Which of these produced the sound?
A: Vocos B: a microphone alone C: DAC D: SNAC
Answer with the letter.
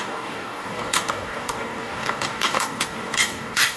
C